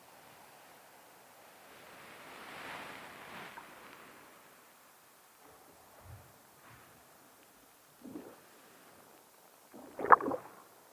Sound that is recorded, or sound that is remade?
recorded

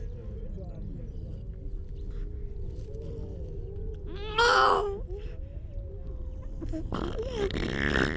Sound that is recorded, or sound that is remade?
recorded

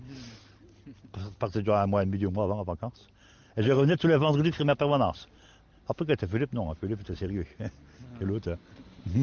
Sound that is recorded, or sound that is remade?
recorded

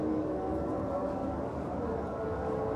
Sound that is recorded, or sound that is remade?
remade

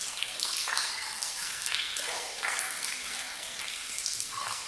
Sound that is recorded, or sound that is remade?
remade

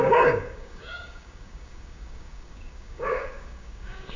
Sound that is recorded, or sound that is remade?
remade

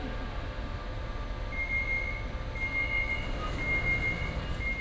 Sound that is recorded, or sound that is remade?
recorded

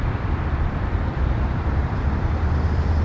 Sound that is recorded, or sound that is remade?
remade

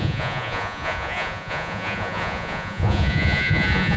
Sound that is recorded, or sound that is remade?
remade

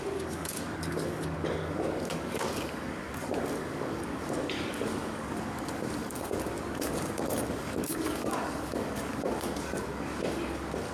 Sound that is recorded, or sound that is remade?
remade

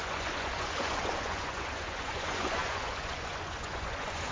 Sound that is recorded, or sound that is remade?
remade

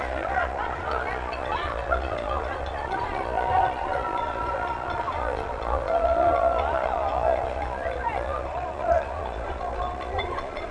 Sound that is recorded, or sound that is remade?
remade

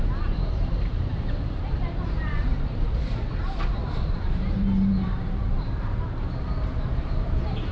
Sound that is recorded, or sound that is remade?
remade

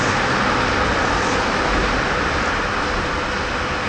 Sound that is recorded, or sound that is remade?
recorded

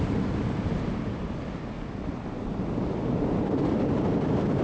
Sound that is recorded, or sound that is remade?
recorded